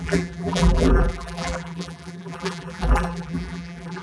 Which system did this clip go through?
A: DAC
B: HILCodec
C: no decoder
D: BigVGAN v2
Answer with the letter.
D